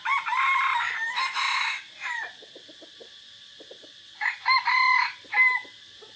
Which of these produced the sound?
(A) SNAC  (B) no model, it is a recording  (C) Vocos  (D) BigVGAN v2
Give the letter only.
B